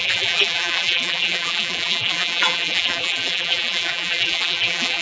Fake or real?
fake